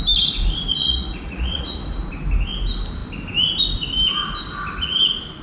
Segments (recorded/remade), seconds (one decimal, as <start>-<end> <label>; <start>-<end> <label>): 0.0-0.7 recorded; 0.7-1.8 remade; 1.8-5.4 recorded